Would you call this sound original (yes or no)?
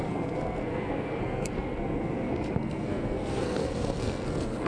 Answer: no